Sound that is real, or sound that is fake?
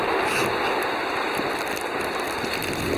real